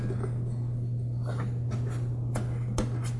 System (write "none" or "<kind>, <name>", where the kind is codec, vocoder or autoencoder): none